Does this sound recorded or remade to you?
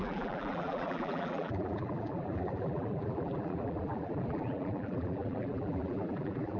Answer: remade